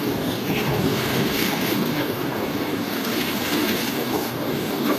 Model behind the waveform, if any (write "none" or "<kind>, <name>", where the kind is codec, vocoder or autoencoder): codec, DAC